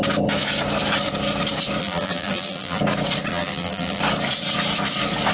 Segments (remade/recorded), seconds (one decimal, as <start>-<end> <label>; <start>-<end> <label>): 0.0-1.8 recorded; 1.8-2.8 remade; 2.8-3.3 recorded; 3.3-4.0 remade; 4.0-5.3 recorded